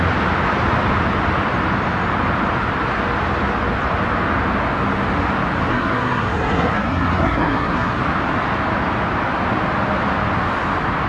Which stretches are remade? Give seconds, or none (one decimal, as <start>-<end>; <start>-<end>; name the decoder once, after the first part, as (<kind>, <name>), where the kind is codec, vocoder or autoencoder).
5.7-8.0 (codec, SNAC)

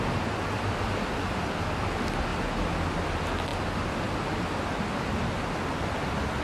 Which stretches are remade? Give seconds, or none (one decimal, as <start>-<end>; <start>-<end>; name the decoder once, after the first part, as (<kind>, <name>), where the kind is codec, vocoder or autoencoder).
0.0-2.3 (vocoder, BigVGAN v2); 2.9-3.5; 5.6-6.4